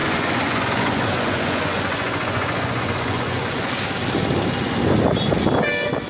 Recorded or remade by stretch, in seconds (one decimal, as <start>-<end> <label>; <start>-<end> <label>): 0.0-3.7 remade; 3.7-6.1 recorded